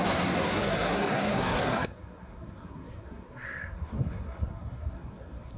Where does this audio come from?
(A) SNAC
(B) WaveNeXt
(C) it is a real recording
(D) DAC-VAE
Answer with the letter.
A